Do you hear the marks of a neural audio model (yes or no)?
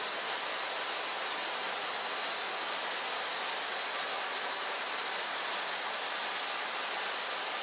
no